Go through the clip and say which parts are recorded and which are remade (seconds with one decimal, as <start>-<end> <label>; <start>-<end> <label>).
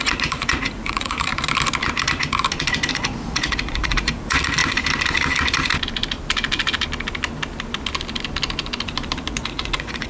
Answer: 0.0-1.3 remade; 1.3-2.9 recorded; 2.9-4.6 remade; 4.6-9.3 recorded; 9.3-10.1 remade